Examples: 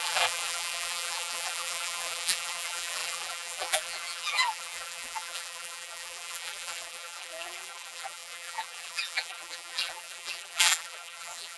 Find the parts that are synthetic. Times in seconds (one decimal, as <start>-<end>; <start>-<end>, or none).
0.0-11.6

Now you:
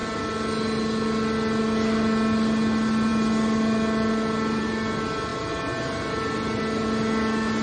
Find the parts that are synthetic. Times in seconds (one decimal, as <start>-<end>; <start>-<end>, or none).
none

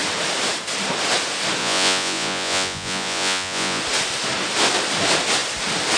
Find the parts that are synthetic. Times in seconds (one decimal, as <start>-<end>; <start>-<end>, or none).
1.6-3.8

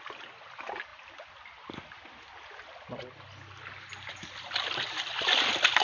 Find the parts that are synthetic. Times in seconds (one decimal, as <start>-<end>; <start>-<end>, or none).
none

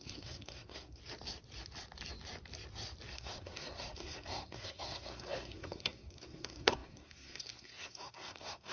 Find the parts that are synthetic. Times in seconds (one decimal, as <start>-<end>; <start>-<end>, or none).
0.0-1.0; 3.1-8.7

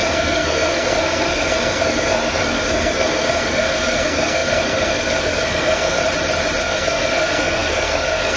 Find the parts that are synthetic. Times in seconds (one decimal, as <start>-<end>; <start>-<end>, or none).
0.0-6.0; 6.6-8.4